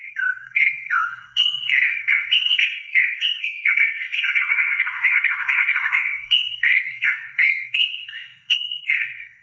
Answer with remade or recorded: remade